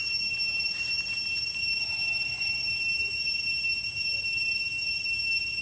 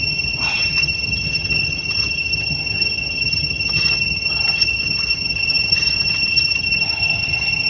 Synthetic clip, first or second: second